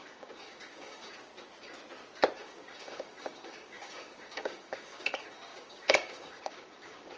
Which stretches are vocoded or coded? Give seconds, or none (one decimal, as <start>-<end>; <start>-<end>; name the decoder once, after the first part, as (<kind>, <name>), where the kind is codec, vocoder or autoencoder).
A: 0.0-1.3 (codec, DAC); 2.4-7.2